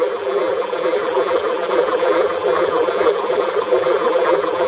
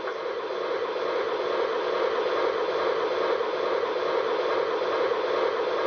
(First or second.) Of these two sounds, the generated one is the first